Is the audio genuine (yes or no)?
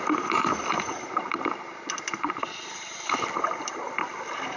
yes